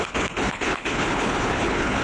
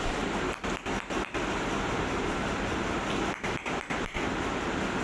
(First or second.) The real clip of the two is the second